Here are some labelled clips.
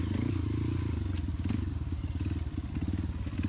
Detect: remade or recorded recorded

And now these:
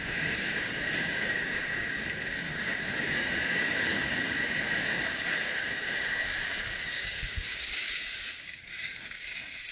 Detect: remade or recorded remade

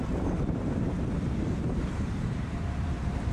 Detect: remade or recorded remade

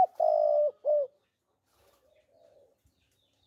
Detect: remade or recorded recorded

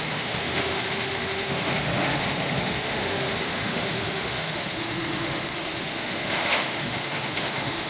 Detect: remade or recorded remade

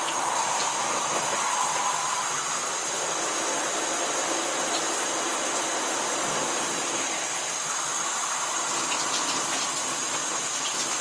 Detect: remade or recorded recorded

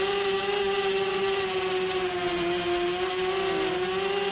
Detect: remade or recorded recorded